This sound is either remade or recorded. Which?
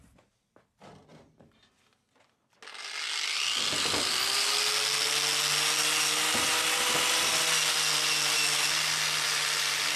recorded